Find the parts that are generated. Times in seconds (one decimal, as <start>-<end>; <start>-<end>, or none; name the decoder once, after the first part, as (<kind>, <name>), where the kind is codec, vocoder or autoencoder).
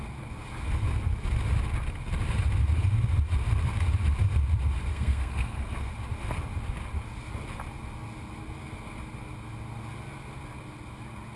4.9-5.9 (codec, SNAC)